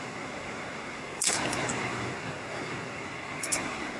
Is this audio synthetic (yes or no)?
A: yes